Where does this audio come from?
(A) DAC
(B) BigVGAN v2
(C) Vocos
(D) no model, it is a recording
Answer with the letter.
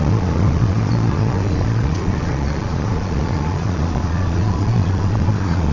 C